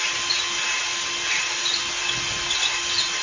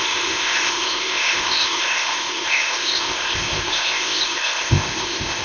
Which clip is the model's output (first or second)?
second